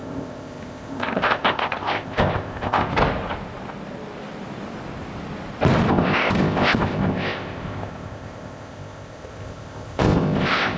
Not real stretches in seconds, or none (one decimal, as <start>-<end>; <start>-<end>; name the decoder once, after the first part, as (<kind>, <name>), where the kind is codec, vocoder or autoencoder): 0.0-2.9 (codec, ZipCodec); 5.9-10.8